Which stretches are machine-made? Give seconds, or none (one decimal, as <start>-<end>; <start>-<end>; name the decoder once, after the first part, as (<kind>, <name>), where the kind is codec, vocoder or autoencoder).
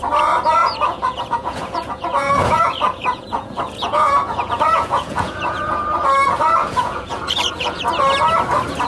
0.6-5.8 (vocoder, Vocos); 6.6-7.8